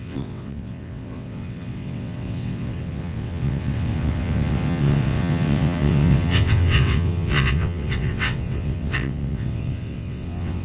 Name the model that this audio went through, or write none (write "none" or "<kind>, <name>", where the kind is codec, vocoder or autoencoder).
vocoder, WaveNeXt